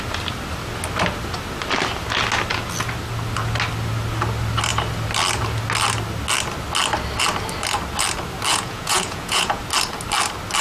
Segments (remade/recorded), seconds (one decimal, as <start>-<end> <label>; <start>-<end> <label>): 0.0-8.5 recorded; 8.5-9.6 remade; 9.6-10.6 recorded